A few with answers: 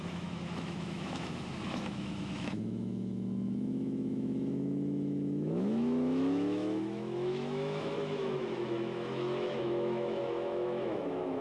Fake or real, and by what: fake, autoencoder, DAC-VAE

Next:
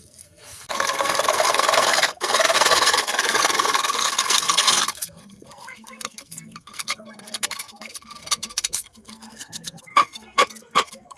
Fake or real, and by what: fake, codec, SNAC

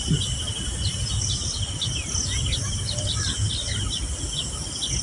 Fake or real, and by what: real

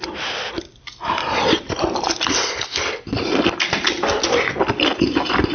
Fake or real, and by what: real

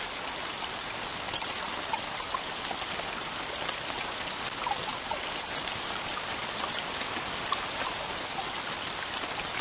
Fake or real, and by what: real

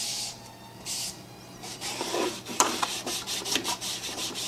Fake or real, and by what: fake, vocoder, BigVGAN v2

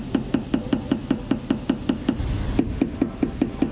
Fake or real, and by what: real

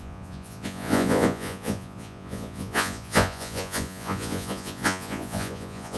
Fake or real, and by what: fake, vocoder, Vocos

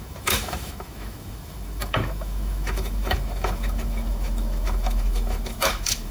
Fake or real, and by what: fake, autoencoder, DAC-VAE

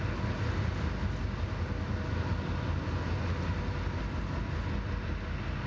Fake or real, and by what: real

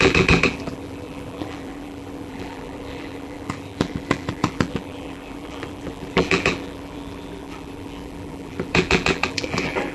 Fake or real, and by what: fake, vocoder, BigVGAN v2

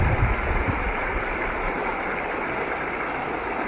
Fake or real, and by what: real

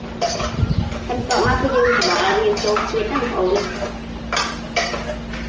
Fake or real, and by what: real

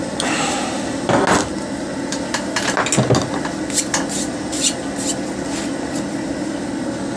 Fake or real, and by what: real